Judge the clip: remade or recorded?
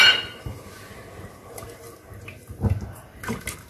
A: recorded